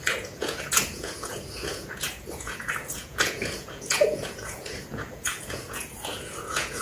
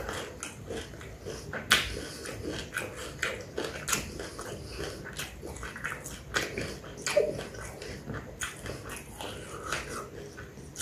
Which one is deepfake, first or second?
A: first